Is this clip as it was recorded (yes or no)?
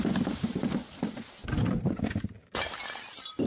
yes